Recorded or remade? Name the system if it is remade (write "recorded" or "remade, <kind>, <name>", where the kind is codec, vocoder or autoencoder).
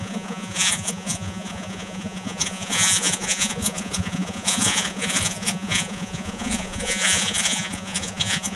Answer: remade, vocoder, Vocos